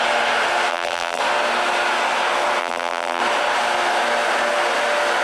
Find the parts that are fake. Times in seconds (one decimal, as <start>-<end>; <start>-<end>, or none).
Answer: 0.7-1.2; 2.6-3.2